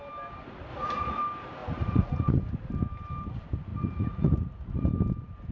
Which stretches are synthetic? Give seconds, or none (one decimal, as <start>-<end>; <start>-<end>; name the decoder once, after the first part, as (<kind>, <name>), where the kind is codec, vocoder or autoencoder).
0.7-1.2 (vocoder, Vocos); 1.6-2.4; 3.7-4.9